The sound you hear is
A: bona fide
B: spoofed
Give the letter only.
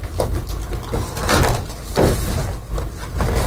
A